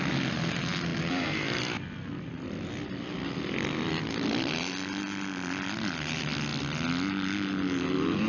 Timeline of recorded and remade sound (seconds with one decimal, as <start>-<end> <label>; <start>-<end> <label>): 0.0-8.3 recorded

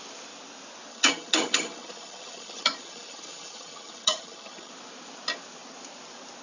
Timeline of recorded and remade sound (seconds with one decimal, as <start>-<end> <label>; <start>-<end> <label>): 0.0-0.9 recorded; 0.9-4.7 remade; 4.7-6.4 recorded

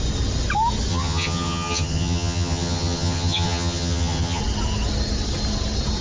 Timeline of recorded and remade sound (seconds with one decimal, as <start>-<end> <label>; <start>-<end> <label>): 0.0-0.9 recorded; 0.9-4.4 remade; 4.4-6.0 recorded

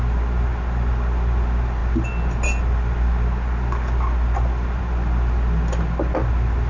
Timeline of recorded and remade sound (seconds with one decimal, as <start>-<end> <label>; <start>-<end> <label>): 0.0-6.7 recorded

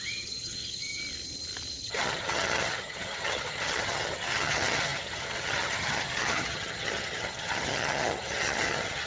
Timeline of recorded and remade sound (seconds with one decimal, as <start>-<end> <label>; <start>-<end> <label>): 0.0-1.0 remade; 1.0-1.8 recorded; 1.8-9.1 remade

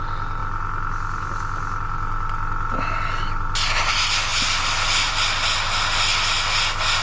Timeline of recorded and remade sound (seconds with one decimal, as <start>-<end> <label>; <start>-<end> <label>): 0.0-7.0 recorded